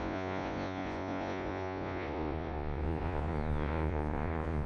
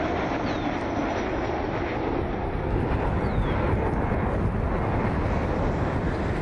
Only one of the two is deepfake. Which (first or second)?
first